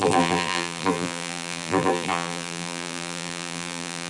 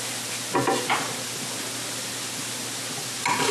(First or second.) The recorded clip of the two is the second